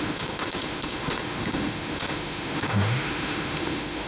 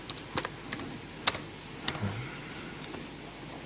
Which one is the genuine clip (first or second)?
second